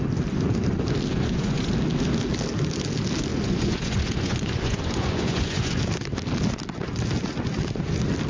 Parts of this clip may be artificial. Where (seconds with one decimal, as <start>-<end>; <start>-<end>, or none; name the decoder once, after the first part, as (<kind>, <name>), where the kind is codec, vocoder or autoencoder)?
1.1-1.7 (vocoder, Vocos); 3.3-5.8